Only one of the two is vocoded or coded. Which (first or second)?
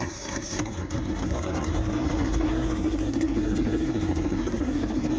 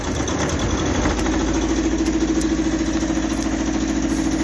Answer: first